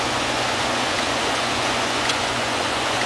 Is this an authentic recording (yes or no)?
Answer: no